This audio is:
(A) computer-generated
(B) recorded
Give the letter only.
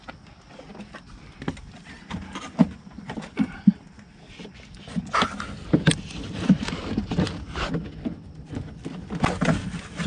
B